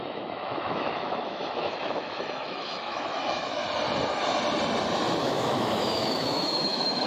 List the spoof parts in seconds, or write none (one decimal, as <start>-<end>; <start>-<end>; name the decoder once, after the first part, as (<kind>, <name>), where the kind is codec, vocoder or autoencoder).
0.0-3.6 (autoencoder, DAC-VAE); 5.2-7.1